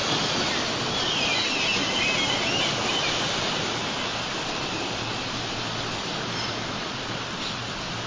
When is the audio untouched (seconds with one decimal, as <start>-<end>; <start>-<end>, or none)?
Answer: 0.0-1.0; 1.8-3.2; 4.1-5.9